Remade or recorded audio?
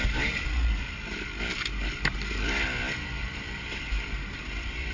recorded